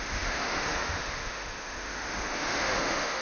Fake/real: fake